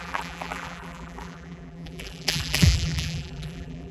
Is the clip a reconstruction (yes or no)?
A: yes